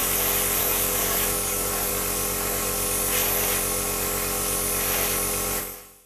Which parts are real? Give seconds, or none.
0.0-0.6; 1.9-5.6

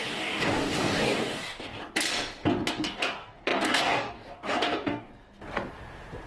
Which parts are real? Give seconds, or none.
1.8-2.7; 5.1-6.3

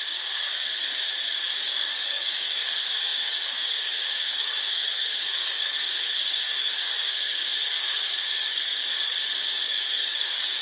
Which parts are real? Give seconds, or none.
none